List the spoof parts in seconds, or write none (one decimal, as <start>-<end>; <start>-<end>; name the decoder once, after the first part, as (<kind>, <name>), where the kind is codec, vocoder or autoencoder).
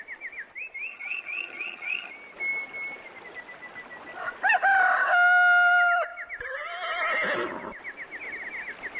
0.9-2.1 (vocoder, HiFi-GAN)